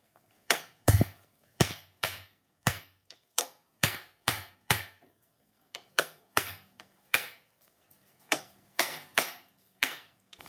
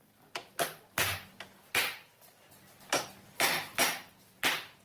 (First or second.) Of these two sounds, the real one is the second